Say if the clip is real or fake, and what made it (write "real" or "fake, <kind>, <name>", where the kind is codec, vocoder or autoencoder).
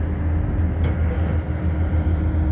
real